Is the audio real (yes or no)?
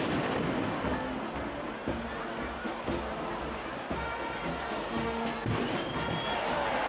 yes